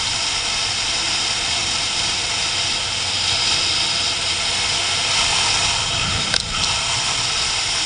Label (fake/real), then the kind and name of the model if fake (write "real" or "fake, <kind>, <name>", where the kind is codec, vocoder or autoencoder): real